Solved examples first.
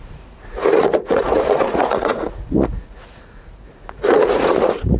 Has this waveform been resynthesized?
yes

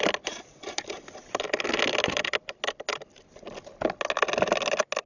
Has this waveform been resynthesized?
no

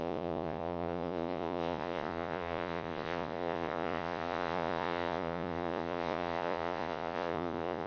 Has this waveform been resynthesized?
yes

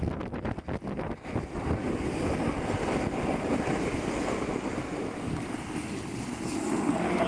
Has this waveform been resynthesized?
no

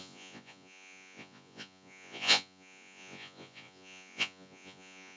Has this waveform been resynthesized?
yes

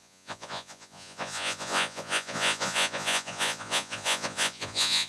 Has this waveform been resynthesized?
yes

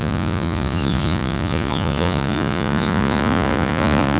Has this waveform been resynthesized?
yes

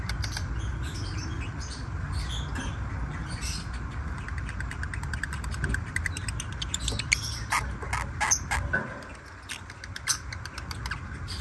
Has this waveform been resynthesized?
no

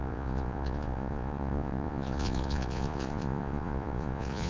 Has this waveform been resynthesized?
yes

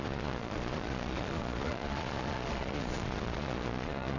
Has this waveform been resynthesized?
yes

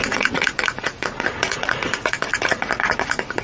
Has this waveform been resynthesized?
yes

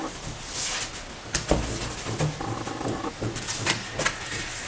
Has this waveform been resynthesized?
no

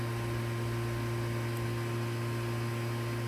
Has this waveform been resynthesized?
no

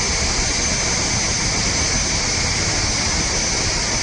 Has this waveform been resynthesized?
no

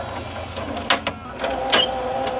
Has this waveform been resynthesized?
no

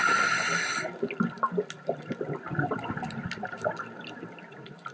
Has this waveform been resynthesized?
no